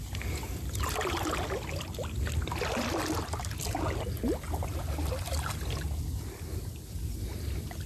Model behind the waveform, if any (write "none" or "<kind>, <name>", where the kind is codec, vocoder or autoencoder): none